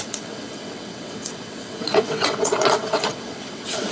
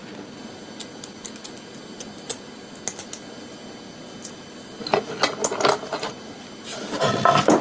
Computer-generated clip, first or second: first